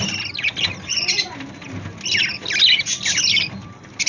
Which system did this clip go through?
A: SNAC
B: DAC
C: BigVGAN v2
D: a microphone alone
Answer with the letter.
D